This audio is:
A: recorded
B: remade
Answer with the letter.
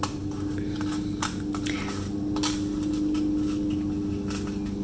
A